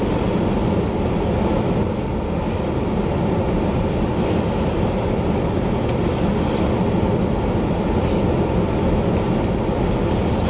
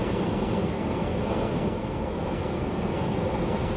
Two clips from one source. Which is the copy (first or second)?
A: second